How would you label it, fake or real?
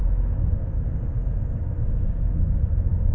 real